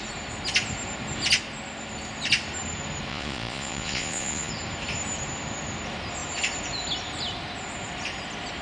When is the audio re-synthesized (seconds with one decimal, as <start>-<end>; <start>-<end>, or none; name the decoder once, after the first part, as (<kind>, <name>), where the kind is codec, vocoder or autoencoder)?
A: 3.1-4.5 (vocoder, Vocos)